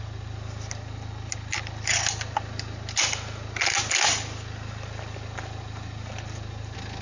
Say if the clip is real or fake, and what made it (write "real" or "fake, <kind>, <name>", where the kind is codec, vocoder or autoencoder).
real